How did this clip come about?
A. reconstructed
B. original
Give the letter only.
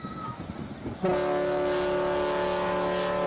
B